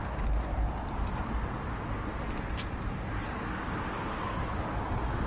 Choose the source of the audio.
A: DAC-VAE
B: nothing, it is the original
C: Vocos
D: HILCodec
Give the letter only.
B